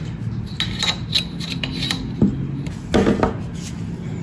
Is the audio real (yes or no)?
yes